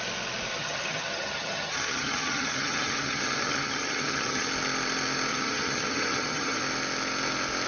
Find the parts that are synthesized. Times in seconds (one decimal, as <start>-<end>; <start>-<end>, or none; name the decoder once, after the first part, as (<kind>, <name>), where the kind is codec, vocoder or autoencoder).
0.5-4.5 (vocoder, HiFi-GAN); 5.3-6.6